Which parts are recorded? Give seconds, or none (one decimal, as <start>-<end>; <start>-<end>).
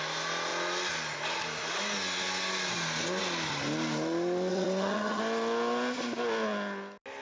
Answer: 0.0-4.5; 5.2-7.2